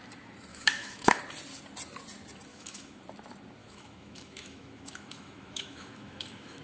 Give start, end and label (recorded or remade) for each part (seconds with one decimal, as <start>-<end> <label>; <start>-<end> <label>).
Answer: 0.0-0.5 recorded; 0.5-1.2 remade; 1.2-2.5 recorded; 2.5-3.0 remade; 3.0-3.6 recorded; 3.6-6.6 remade